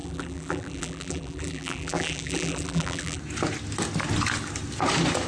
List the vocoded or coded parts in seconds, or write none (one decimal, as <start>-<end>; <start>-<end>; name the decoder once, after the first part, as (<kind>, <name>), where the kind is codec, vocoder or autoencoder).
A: 0.0-3.2 (vocoder, BigVGAN v2)